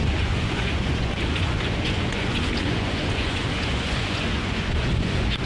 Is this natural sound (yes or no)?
no